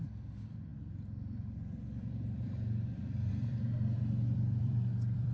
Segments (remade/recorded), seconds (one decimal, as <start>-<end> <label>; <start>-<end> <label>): 0.0-5.3 remade